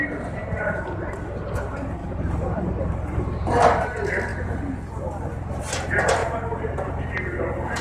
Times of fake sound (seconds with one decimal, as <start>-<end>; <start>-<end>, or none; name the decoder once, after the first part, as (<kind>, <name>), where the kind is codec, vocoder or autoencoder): 0.4-1.1 (vocoder, BigVGAN v2); 2.0-3.6; 6.2-6.9